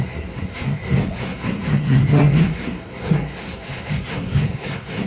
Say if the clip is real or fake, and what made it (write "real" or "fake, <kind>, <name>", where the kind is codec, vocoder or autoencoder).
fake, codec, SNAC